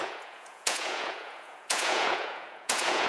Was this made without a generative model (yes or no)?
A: no